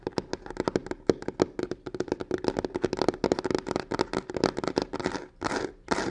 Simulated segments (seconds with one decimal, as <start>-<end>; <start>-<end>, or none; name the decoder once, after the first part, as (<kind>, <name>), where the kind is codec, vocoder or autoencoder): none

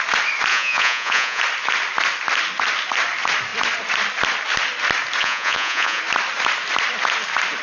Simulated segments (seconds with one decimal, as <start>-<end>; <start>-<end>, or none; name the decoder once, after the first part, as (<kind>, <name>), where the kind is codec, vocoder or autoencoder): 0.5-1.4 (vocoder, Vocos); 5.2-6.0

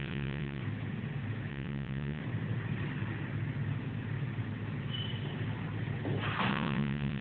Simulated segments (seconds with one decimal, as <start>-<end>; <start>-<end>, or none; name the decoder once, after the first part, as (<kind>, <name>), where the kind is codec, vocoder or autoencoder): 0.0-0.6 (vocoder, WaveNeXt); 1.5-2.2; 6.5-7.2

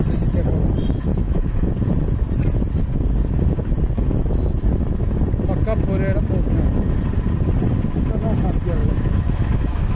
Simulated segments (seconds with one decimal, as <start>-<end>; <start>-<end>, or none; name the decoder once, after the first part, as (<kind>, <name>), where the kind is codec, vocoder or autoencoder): 1.1-1.7 (autoencoder, DAC-VAE); 8.8-10.0

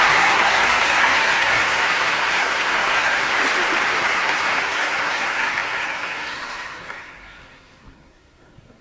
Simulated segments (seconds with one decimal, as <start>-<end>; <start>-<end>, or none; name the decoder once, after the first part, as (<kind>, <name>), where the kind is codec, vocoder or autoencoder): 0.0-3.4 (codec, SNAC); 4.0-8.8

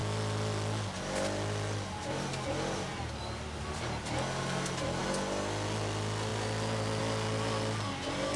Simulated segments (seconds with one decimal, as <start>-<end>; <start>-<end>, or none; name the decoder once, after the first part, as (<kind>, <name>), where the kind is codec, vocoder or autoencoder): none